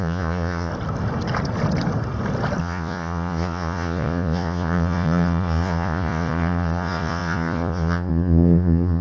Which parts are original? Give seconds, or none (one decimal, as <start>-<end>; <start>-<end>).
0.7-2.6